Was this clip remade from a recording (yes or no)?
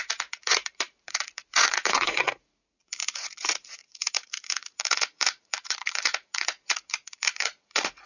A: yes